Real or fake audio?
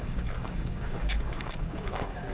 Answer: fake